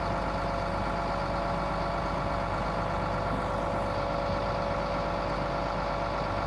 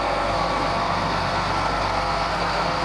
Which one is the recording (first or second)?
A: first